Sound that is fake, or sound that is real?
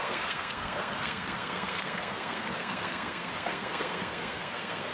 fake